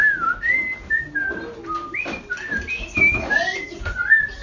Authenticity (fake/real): real